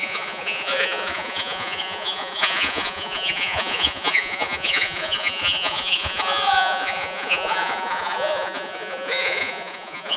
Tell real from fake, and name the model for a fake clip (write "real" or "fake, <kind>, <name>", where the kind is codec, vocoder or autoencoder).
fake, vocoder, Vocos